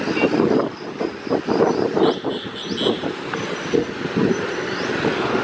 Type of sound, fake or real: real